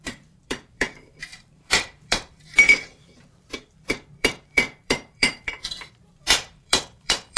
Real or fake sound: fake